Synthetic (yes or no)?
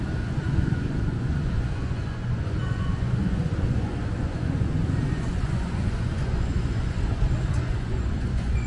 yes